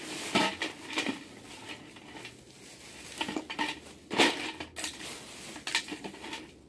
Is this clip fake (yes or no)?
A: no